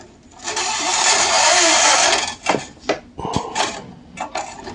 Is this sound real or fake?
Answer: real